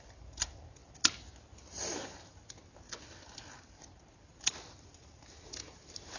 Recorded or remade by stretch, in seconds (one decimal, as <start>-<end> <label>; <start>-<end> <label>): 0.0-0.8 remade; 0.8-4.5 recorded; 4.5-6.2 remade